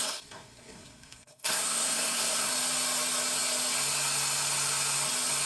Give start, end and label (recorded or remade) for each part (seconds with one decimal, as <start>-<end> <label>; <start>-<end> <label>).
0.0-2.5 remade; 2.5-5.5 recorded